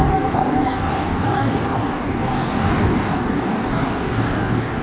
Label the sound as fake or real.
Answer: fake